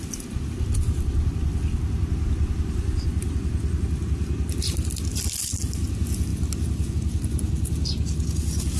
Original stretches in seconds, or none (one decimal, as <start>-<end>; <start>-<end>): 0.0-8.8